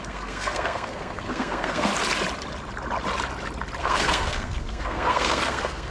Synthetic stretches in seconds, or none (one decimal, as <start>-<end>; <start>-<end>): 0.0-1.9; 3.8-5.9

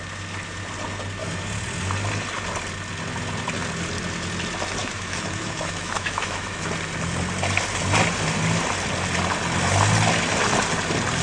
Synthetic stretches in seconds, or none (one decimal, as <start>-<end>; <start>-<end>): 4.8-6.7

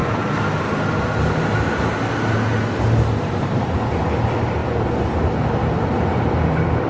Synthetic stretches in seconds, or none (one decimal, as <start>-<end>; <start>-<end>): none